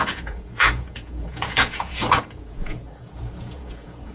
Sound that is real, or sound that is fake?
fake